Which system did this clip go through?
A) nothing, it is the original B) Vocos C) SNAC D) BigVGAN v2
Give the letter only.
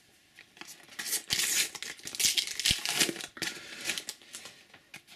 A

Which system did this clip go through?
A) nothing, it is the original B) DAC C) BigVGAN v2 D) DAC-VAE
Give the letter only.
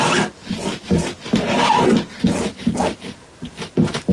A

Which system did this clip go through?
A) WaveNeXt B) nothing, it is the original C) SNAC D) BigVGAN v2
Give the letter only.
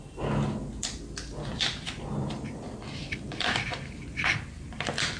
D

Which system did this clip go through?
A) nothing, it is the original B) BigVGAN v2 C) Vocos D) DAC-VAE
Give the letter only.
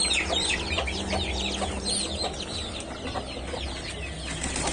A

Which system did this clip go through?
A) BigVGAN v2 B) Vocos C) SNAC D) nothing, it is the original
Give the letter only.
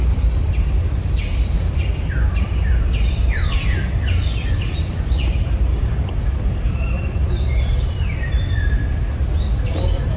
A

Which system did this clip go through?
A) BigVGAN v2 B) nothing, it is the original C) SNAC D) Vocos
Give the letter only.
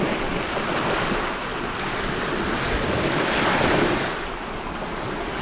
B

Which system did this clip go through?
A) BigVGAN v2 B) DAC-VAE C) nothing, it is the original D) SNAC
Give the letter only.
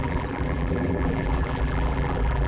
A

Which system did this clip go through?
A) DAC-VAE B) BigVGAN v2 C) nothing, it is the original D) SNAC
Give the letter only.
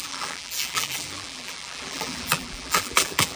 B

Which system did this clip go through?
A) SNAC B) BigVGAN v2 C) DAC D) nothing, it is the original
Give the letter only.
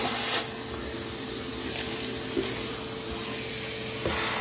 D